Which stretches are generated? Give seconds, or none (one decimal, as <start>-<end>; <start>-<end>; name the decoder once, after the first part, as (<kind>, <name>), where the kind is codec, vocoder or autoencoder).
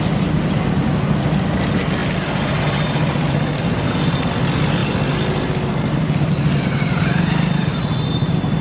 none